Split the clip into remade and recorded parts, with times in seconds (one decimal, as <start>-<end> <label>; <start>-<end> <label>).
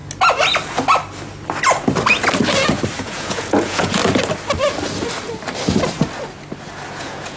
0.0-3.0 recorded; 3.0-4.0 remade; 4.0-6.9 recorded; 6.9-7.4 remade